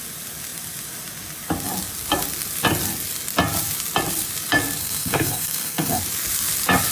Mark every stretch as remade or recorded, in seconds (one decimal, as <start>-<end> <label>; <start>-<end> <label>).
0.0-4.8 recorded; 4.8-6.0 remade; 6.0-6.9 recorded